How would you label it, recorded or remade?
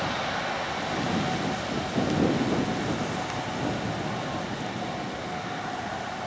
recorded